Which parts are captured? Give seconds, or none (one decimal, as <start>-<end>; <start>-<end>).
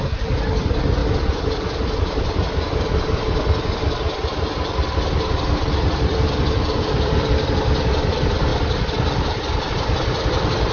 1.0-5.7; 8.5-9.7